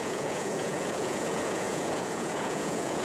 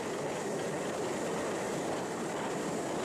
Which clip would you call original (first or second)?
second